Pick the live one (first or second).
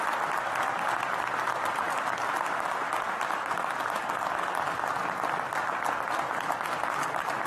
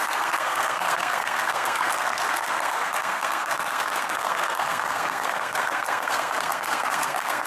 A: first